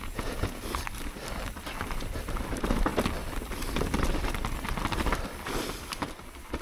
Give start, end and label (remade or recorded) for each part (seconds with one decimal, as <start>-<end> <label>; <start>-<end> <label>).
0.0-0.6 remade; 0.6-6.6 recorded